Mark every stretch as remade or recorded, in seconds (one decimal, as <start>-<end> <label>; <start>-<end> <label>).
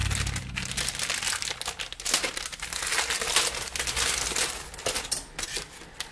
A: 0.0-6.1 recorded